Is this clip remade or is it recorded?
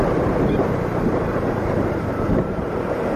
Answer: remade